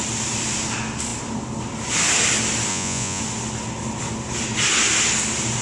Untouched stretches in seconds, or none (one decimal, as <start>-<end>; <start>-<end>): 0.0-2.7; 3.2-5.6